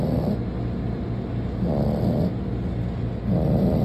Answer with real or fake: real